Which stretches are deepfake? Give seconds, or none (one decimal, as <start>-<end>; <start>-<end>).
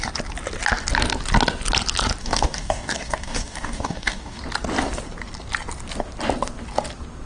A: 2.2-4.4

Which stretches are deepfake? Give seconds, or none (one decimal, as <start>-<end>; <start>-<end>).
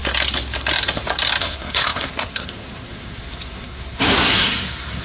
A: 1.4-5.0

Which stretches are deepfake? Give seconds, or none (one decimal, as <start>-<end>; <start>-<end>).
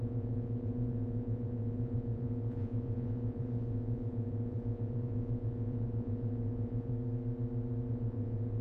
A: 0.0-6.9; 7.9-8.6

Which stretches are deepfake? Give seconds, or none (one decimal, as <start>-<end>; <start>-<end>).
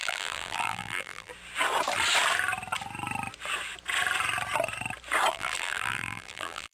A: 0.0-1.3; 5.3-6.7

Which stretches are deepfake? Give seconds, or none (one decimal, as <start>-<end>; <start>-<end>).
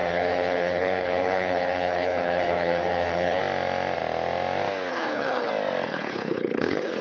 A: 0.0-3.4; 4.9-5.5; 5.9-7.0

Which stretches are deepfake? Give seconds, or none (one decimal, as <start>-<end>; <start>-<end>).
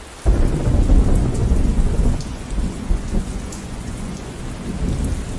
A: 1.2-4.4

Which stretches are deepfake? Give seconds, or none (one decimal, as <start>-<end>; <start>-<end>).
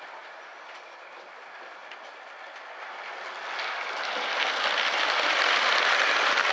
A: none